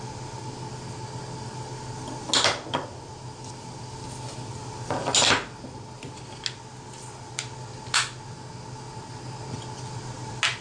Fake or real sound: real